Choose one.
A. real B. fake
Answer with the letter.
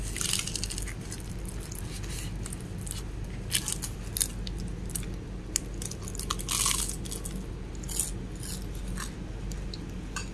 A